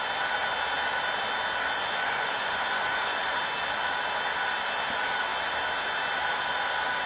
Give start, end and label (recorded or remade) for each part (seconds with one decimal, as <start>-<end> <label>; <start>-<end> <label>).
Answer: 0.0-1.8 recorded; 1.8-3.4 remade; 3.4-7.1 recorded